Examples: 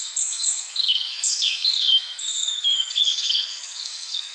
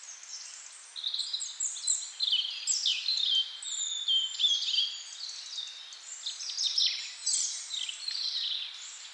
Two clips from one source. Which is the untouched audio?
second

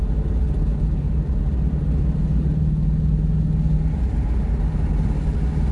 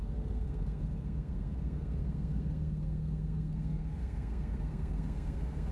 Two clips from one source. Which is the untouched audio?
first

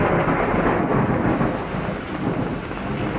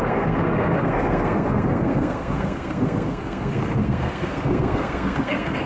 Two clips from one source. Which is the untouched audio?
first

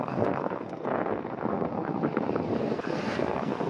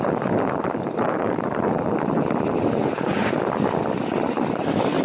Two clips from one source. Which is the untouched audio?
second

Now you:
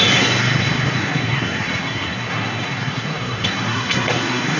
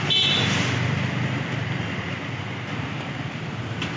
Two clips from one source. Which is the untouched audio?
second